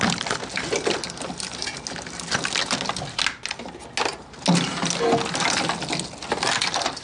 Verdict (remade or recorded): recorded